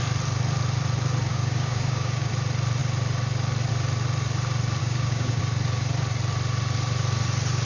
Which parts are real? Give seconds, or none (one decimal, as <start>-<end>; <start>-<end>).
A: 0.0-1.3; 2.3-4.8; 5.4-7.7